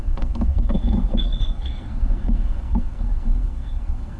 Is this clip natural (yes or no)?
no